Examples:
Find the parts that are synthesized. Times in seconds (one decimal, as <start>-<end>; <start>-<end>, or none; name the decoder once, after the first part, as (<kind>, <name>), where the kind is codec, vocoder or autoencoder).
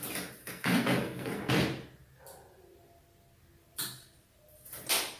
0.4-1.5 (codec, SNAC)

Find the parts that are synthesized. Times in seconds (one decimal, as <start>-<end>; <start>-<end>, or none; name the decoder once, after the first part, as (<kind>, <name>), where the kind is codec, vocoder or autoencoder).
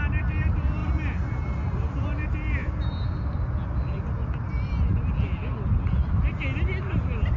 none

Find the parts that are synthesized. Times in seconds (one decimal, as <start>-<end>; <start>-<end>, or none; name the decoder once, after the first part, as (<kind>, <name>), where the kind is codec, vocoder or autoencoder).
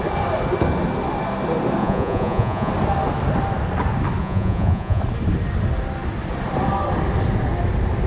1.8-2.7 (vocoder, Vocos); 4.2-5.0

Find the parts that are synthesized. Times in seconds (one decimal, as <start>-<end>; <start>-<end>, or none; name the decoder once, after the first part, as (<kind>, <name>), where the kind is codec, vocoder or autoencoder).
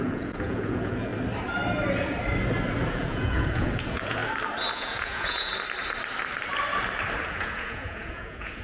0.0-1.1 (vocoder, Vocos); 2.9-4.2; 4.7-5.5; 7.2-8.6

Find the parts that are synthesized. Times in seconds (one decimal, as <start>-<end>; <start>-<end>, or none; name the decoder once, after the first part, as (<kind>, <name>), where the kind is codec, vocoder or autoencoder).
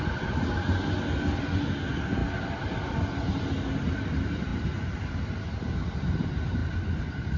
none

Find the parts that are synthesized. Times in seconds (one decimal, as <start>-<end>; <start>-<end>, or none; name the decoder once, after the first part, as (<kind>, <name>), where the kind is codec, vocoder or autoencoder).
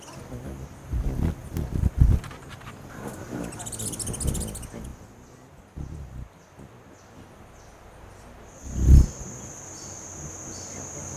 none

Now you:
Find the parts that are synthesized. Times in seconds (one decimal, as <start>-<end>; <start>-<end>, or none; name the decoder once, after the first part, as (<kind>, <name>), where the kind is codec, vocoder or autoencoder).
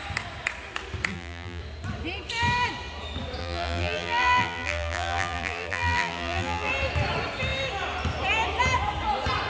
1.1-1.6 (vocoder, BigVGAN v2); 3.4-6.7